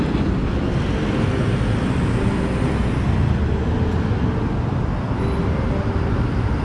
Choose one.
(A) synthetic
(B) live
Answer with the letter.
B